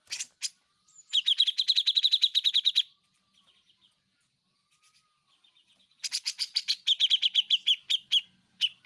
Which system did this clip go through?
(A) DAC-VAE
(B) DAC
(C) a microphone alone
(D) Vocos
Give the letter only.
C